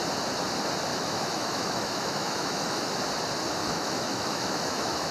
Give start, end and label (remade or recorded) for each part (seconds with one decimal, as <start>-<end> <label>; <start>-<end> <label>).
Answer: 0.0-0.9 recorded; 0.9-3.0 remade; 3.0-3.6 recorded; 3.6-5.1 remade